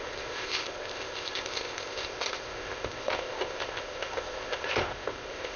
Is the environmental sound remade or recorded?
remade